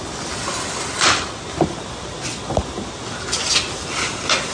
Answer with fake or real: real